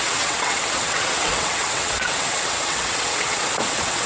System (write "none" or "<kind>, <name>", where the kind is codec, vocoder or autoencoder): vocoder, WaveNeXt